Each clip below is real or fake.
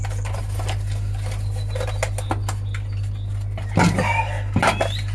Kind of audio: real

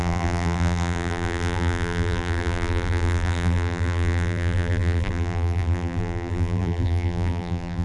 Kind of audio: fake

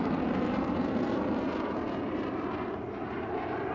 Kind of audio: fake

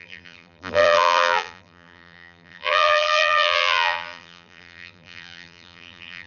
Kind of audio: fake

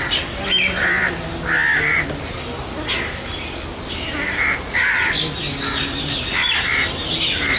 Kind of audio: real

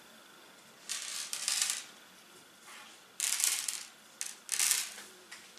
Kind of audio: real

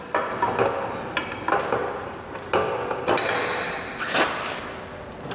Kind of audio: real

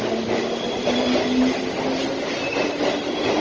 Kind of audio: real